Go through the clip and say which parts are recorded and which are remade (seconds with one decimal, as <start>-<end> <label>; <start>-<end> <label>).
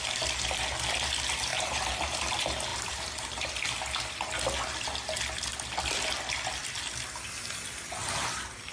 0.0-1.5 recorded; 1.5-2.2 remade; 2.2-2.7 recorded; 2.7-3.5 remade; 3.5-8.7 recorded